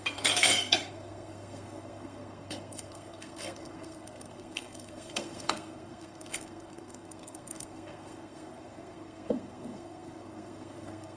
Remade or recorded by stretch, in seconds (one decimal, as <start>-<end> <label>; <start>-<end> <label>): 0.0-11.2 remade